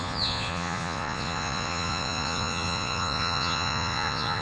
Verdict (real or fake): fake